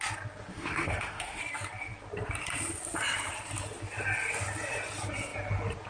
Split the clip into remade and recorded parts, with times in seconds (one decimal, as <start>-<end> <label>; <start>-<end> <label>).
0.0-0.5 recorded; 0.5-1.4 remade; 1.4-5.9 recorded